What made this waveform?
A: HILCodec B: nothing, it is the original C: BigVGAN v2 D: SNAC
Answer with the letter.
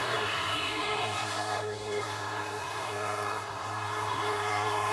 D